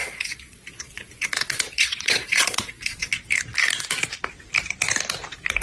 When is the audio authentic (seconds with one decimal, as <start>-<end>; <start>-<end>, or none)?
3.1-5.6